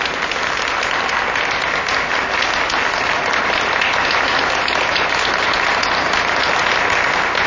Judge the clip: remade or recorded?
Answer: recorded